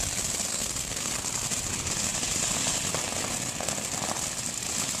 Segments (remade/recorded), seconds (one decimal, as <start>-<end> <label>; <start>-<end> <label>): 0.0-0.5 recorded; 0.5-1.1 remade; 1.1-5.0 recorded